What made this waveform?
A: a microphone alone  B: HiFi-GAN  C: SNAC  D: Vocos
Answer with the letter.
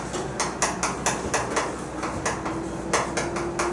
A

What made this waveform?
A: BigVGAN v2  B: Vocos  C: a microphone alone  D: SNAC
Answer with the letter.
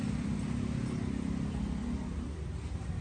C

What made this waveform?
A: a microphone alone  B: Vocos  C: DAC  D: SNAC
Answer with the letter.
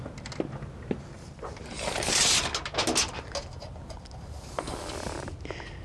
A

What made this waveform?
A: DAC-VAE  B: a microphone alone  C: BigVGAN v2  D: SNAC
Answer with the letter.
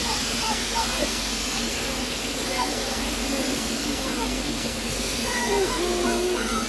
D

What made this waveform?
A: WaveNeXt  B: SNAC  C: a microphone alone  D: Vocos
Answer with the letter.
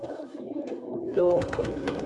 B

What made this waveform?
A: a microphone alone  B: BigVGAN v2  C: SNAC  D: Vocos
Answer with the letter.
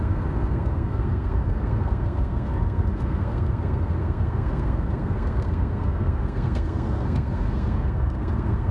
C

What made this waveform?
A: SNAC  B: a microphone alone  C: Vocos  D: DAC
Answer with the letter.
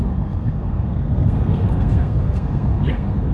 A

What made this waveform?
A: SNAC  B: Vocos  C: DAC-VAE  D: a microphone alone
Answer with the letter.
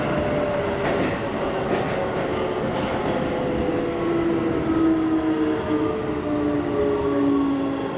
D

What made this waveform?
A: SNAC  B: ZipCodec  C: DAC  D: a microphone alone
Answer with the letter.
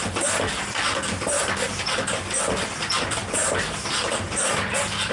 D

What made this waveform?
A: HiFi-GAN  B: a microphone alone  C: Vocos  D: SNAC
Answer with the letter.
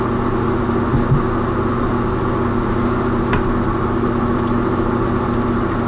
B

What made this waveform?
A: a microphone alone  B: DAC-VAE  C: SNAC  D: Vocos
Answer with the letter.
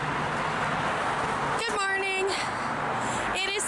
A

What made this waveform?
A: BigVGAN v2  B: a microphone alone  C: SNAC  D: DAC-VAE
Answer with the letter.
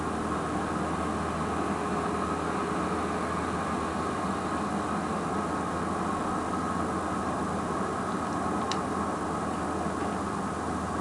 B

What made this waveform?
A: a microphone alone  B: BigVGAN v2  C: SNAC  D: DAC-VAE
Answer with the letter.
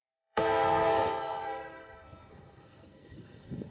C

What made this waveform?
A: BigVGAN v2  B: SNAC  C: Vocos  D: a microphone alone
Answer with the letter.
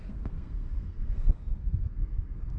B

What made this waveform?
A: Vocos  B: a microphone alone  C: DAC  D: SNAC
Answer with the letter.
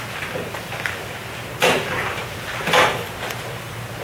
B